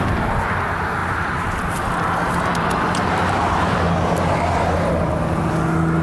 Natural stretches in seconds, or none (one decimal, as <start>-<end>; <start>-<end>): 0.0-1.0; 3.9-6.0